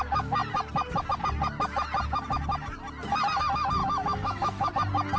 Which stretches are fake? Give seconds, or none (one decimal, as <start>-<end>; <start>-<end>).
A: 3.8-4.7